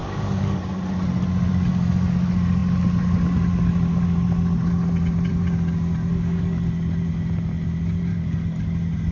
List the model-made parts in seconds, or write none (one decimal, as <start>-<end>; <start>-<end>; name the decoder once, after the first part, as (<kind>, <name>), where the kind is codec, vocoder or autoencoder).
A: 0.0-0.6 (codec, DAC); 6.1-6.6; 8.1-8.6